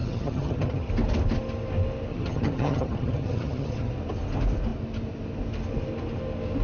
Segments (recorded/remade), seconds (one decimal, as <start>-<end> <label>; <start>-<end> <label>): 0.0-0.9 remade; 0.9-2.1 recorded; 2.1-3.9 remade; 3.9-6.6 recorded